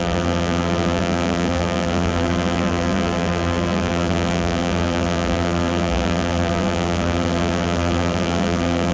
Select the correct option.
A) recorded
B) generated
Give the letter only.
B